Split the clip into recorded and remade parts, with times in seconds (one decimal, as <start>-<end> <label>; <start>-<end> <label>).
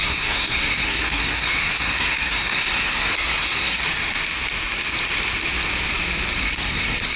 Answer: 0.0-3.8 remade; 3.8-6.4 recorded; 6.4-7.2 remade